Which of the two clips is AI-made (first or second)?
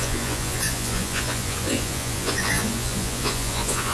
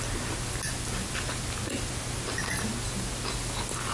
first